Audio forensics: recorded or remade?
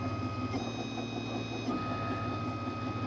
recorded